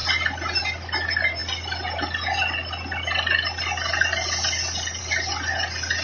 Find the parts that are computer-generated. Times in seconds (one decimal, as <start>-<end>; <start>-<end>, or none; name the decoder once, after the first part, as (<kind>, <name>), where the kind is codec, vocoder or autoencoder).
none